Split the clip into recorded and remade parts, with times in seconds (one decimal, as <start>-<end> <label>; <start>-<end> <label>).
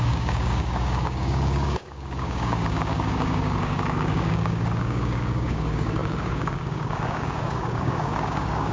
0.0-8.7 remade